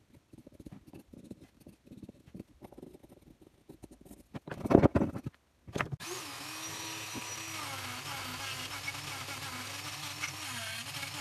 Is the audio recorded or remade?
recorded